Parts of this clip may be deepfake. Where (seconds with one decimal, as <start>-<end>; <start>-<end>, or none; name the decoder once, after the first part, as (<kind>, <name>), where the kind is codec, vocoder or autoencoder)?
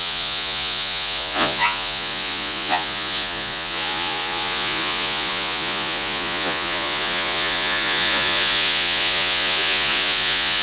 0.0-10.6 (vocoder, Vocos)